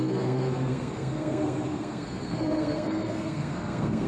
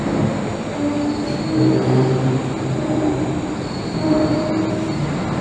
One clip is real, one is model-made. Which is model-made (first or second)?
first